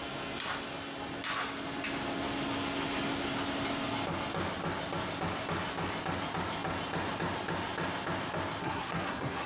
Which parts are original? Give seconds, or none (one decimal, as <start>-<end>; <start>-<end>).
0.0-8.6